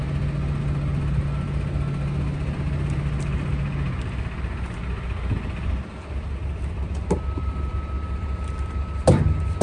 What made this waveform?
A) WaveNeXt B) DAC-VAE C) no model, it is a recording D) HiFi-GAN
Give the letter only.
C